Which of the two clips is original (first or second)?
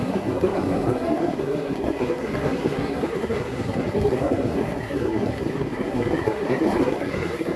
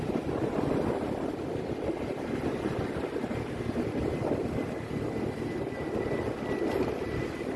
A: second